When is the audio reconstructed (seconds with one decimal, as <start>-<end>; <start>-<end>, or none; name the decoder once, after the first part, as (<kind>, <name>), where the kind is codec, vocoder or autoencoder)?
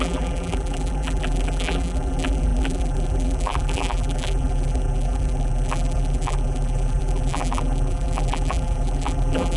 0.0-9.6 (vocoder, BigVGAN v2)